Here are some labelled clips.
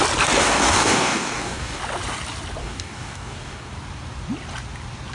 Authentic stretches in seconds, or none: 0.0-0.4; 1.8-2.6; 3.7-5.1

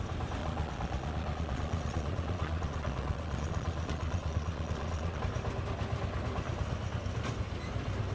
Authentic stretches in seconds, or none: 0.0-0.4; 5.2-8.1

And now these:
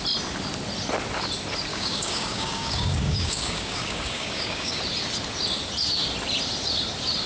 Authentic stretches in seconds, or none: 0.0-1.7; 4.8-7.3

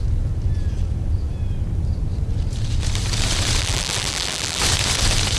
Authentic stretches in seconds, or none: 0.0-3.6; 4.6-5.4